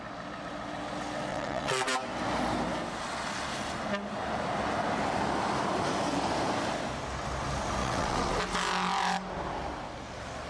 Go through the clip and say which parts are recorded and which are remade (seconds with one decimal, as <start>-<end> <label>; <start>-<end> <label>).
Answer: 0.0-1.3 recorded; 1.3-1.9 remade; 1.9-7.8 recorded; 7.8-8.3 remade; 8.3-10.5 recorded